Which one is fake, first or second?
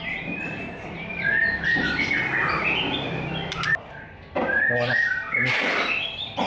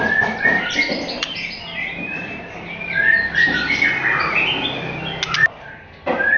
first